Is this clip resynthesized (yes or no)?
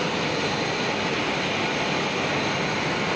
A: no